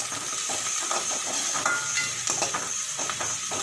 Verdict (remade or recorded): recorded